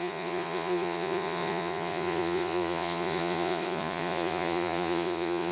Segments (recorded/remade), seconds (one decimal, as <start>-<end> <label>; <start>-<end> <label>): 0.0-5.5 remade